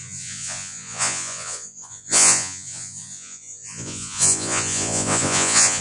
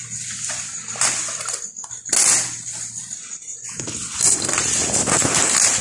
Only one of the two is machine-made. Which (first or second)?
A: first